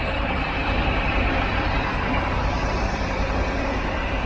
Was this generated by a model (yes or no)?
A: yes